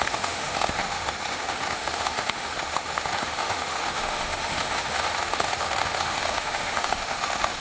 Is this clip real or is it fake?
fake